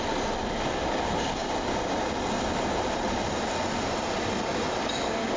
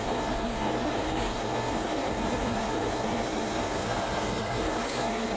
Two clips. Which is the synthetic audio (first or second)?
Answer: second